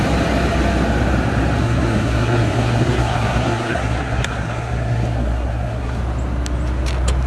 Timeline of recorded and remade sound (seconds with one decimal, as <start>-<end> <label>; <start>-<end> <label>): 0.0-1.6 recorded; 1.6-6.0 remade; 6.0-7.3 recorded